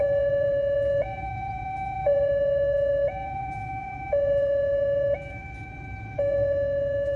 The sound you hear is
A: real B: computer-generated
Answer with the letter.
B